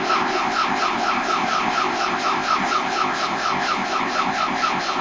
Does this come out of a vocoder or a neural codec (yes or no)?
yes